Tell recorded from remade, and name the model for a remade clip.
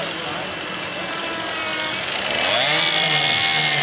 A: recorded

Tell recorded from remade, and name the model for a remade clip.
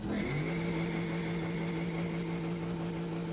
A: recorded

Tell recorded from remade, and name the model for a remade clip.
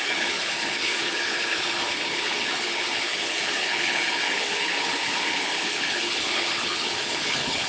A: remade, codec, HILCodec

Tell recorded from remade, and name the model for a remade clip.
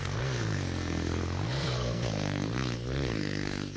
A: remade, codec, SNAC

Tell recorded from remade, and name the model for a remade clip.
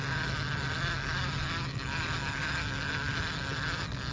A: recorded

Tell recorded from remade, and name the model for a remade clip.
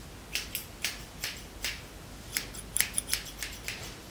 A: recorded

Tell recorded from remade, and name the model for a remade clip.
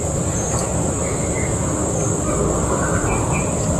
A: recorded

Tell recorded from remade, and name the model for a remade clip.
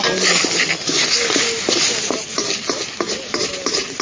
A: recorded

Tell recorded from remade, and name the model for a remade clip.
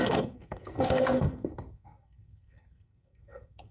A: remade, codec, SNAC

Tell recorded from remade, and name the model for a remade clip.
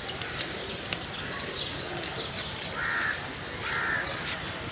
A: recorded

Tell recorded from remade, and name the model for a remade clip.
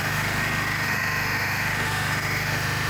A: remade, autoencoder, DAC-VAE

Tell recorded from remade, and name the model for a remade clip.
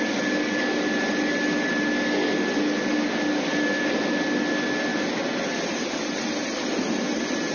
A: recorded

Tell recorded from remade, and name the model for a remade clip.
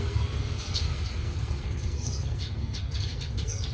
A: remade, codec, SNAC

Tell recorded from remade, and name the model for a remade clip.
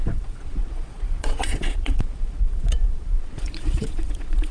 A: remade, vocoder, Vocos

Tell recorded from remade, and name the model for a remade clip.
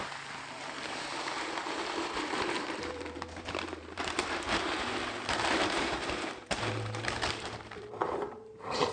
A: remade, vocoder, BigVGAN v2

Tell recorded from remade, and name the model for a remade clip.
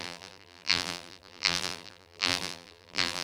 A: remade, vocoder, BigVGAN v2